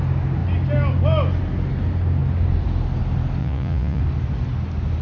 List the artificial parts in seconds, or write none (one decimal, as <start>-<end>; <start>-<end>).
3.4-4.0